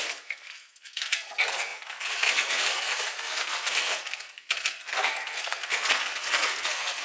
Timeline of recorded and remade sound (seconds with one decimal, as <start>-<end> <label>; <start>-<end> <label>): 0.0-7.0 remade